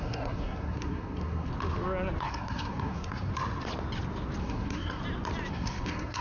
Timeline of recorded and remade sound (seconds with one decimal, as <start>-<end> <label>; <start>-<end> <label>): 0.0-1.5 remade; 1.5-2.2 recorded; 2.2-3.3 remade; 3.3-4.4 recorded; 4.4-5.0 remade; 5.0-5.5 recorded; 5.5-6.2 remade